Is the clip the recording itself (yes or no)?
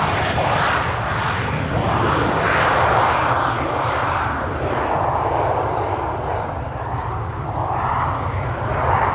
no